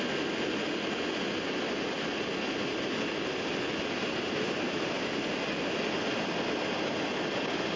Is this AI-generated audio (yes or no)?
no